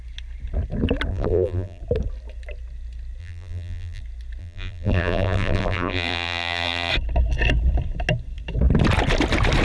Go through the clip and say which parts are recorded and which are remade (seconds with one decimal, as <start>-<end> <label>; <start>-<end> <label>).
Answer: 0.0-1.1 recorded; 1.1-1.8 remade; 1.8-3.2 recorded; 3.2-4.0 remade; 4.0-4.4 recorded; 4.4-6.9 remade; 6.9-9.6 recorded